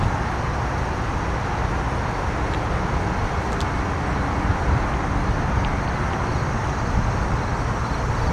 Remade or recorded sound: recorded